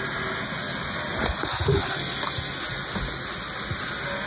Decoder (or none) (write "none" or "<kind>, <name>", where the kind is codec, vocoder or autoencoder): none